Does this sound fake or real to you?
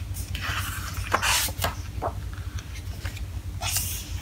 real